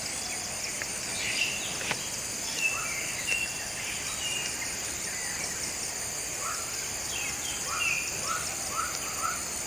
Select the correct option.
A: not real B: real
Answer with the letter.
B